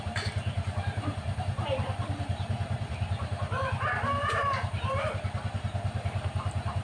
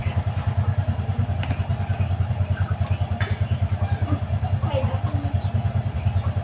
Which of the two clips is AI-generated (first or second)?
first